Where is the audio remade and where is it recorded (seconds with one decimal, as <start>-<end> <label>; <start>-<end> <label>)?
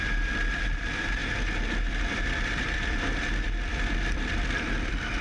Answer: 0.0-1.2 remade; 1.2-1.9 recorded; 1.9-5.2 remade